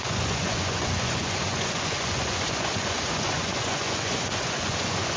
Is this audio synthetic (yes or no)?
yes